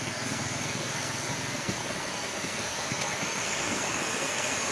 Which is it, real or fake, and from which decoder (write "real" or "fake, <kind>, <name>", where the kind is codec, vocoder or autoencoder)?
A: fake, codec, SNAC